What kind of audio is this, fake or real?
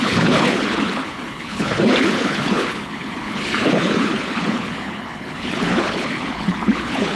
fake